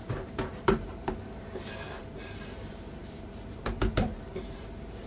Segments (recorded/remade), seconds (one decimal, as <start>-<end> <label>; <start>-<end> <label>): 0.0-1.1 remade; 1.1-2.0 recorded; 2.0-5.1 remade